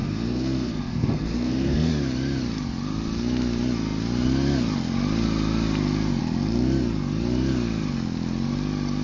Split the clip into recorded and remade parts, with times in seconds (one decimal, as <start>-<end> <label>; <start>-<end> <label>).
0.0-1.9 remade; 1.9-9.0 recorded